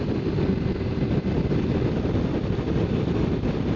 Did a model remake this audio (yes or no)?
no